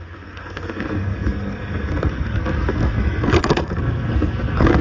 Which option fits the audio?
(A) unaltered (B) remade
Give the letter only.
B